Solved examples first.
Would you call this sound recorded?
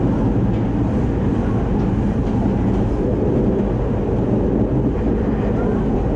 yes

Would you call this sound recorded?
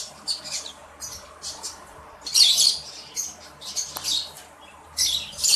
no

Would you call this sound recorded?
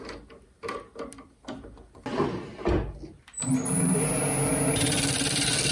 yes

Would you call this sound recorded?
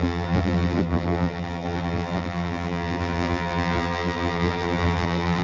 no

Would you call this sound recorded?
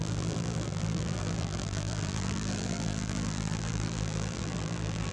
no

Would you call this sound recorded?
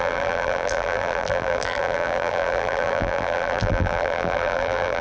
no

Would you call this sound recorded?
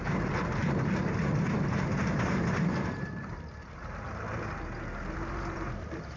no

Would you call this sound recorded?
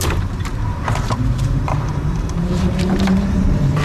no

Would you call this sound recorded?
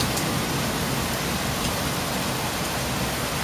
yes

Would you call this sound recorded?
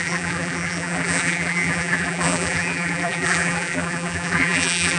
no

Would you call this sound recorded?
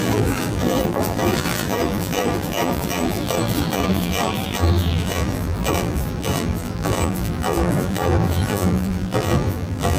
no